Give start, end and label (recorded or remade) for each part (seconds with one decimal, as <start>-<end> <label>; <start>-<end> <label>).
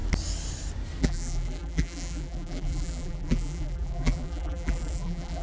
0.0-1.0 recorded; 1.0-5.4 remade